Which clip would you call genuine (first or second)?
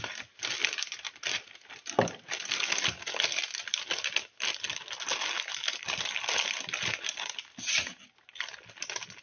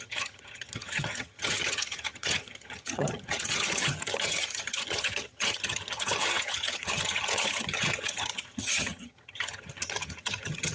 first